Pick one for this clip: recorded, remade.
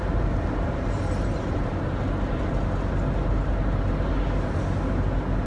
recorded